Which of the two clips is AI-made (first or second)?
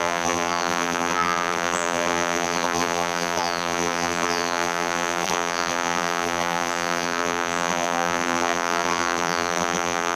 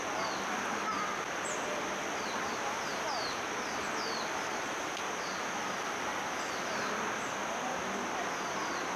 first